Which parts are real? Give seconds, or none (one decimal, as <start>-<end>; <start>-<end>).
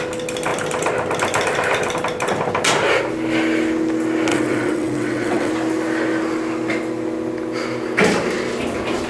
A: 0.0-4.3; 5.5-9.1